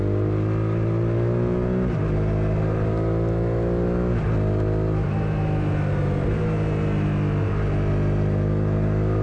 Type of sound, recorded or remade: recorded